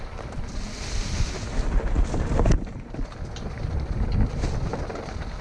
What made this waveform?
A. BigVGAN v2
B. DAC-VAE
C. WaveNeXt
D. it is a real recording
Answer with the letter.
D